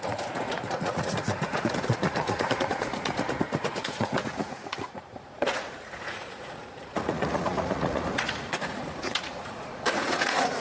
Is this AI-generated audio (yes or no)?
yes